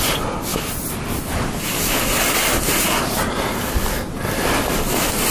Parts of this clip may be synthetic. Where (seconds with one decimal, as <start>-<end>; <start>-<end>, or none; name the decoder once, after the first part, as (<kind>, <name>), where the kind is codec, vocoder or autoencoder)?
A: none